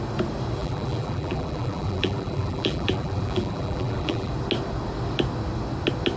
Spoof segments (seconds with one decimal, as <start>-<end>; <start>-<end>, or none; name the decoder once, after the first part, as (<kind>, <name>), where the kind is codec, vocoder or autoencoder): 0.6-4.3 (vocoder, BigVGAN v2)